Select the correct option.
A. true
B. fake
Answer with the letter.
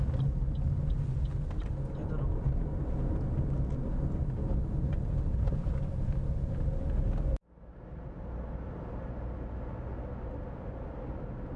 A